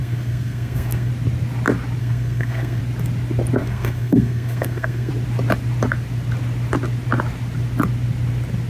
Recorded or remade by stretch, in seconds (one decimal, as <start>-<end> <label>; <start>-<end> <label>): 0.0-1.1 remade; 1.1-2.0 recorded; 2.0-2.8 remade; 2.8-3.6 recorded; 3.6-5.1 remade; 5.1-8.7 recorded